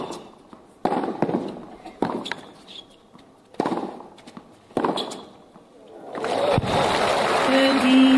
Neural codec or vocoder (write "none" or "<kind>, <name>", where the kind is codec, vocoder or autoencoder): none